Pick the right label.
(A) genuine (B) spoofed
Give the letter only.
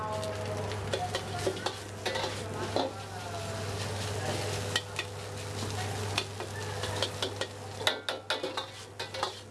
A